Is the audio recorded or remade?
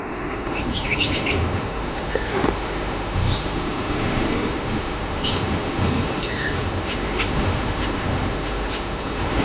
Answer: remade